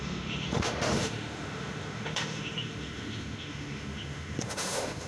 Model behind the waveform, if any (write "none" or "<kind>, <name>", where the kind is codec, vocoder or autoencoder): autoencoder, DAC-VAE